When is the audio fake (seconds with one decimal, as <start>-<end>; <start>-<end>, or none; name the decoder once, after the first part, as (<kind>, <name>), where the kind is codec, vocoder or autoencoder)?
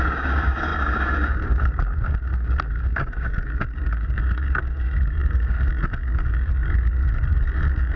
0.0-8.0 (codec, DAC)